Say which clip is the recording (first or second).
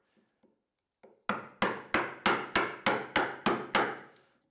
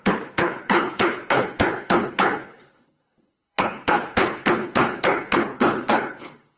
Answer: first